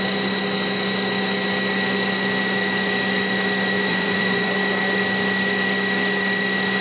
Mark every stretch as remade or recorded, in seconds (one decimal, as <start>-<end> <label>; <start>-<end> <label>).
0.0-3.9 recorded; 3.9-4.5 remade; 4.5-6.8 recorded